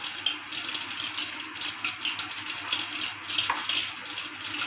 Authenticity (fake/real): real